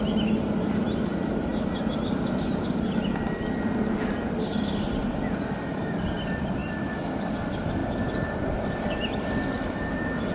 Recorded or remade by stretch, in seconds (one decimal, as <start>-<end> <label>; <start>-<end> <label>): 0.0-1.5 remade; 1.5-5.8 recorded; 5.8-7.8 remade; 7.8-8.8 recorded; 8.8-10.3 remade